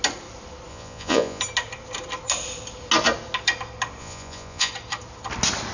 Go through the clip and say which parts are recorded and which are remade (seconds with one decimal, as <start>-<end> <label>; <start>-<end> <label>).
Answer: 0.0-0.7 recorded; 0.7-1.4 remade; 1.4-4.0 recorded; 4.0-4.7 remade; 4.7-5.7 recorded